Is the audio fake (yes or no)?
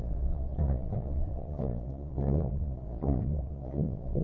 yes